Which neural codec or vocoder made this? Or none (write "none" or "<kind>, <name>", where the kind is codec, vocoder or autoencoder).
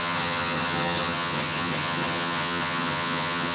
vocoder, HiFi-GAN